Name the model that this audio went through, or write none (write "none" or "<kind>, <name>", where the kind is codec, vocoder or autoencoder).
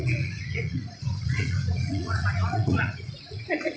vocoder, Vocos